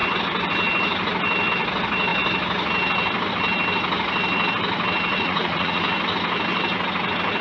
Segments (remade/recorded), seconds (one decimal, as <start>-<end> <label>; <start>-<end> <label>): 0.0-5.1 recorded; 5.1-5.8 remade; 5.8-7.4 recorded